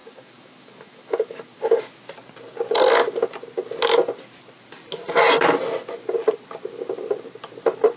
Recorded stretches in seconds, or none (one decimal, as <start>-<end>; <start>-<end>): 1.6-8.0